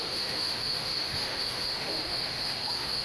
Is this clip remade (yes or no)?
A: yes